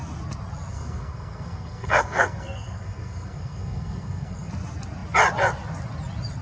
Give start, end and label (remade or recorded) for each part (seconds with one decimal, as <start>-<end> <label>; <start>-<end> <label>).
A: 0.0-0.7 recorded; 0.7-4.5 remade; 4.5-6.4 recorded